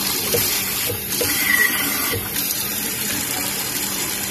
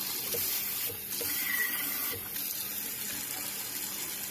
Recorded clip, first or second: second